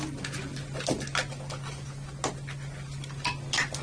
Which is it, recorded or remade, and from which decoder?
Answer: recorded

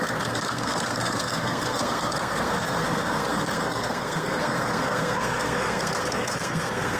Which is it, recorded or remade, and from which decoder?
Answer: remade, codec, SNAC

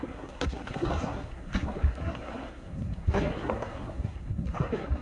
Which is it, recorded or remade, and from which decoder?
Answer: remade, codec, SNAC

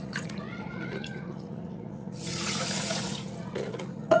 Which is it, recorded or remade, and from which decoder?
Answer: remade, vocoder, Vocos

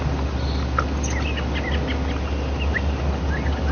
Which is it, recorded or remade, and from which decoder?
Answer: recorded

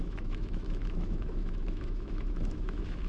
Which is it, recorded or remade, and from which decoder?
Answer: remade, autoencoder, DAC-VAE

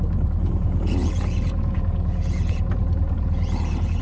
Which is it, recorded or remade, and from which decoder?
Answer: remade, vocoder, Vocos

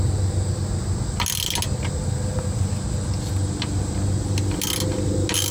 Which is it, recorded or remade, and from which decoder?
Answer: recorded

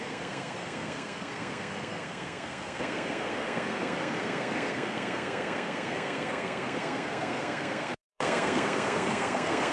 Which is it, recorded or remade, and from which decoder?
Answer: remade, codec, SNAC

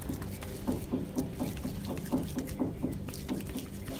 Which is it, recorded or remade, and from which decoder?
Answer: recorded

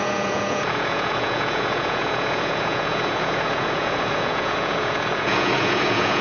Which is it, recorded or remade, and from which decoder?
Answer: remade, vocoder, Vocos